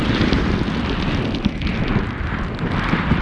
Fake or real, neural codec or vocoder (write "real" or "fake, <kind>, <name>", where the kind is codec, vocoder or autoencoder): fake, vocoder, BigVGAN v2